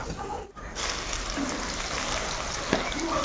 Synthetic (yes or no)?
no